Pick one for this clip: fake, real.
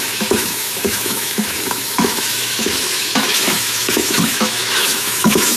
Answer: fake